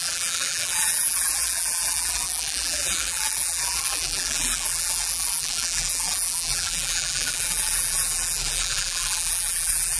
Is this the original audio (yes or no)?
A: no